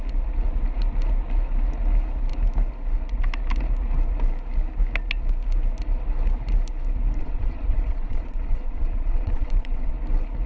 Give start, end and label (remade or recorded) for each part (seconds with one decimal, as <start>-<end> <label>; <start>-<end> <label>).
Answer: 0.0-7.2 recorded; 7.2-9.9 remade; 9.9-10.5 recorded